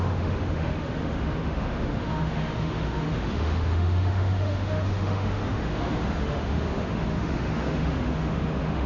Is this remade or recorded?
remade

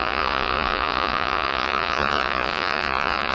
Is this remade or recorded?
remade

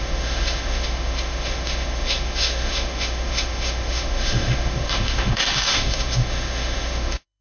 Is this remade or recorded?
remade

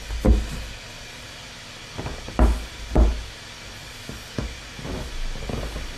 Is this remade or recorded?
recorded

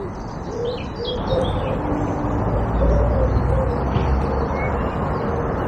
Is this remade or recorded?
recorded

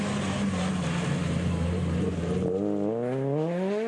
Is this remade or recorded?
recorded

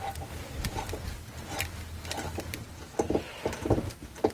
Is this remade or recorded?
recorded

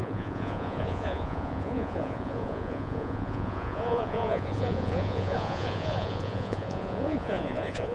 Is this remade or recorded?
remade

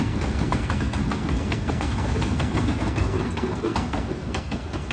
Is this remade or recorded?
remade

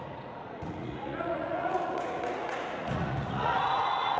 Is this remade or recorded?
remade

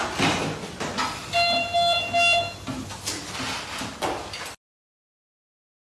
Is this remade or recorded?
recorded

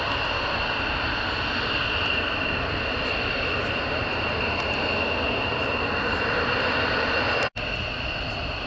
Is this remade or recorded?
recorded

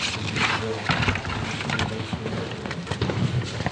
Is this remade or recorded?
recorded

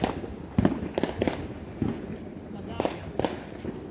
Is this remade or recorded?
recorded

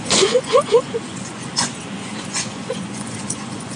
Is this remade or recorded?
remade